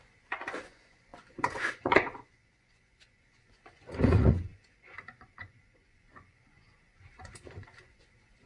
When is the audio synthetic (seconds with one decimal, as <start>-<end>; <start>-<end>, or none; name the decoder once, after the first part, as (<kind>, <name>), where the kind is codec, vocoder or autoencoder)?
0.0-8.5 (vocoder, Vocos)